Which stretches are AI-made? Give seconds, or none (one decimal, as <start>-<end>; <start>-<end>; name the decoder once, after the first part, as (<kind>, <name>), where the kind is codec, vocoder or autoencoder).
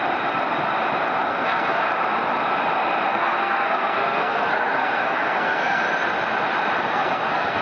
1.3-1.8 (codec, SNAC); 3.1-5.8; 6.9-7.6